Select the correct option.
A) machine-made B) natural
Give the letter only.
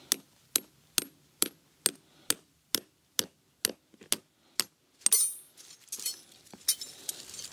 B